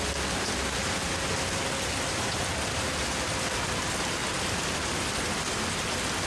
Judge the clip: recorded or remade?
recorded